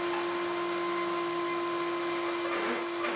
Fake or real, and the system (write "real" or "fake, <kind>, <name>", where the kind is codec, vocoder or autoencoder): real